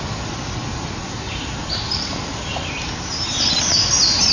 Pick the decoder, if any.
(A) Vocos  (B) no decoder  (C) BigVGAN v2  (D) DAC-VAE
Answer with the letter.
B